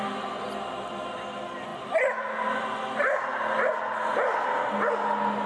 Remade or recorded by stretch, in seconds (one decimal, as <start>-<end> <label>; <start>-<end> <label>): 0.0-5.5 recorded